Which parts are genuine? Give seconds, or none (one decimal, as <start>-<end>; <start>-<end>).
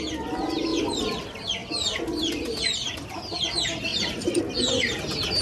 0.0-0.7; 1.2-1.6; 2.9-3.9; 4.4-5.4